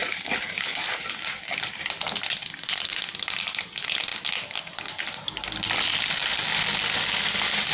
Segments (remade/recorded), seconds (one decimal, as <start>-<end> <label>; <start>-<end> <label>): 0.0-7.7 recorded